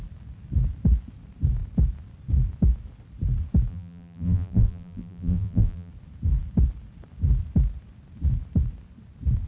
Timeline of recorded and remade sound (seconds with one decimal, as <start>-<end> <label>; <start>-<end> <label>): 0.0-3.7 recorded; 3.7-5.9 remade; 5.9-9.5 recorded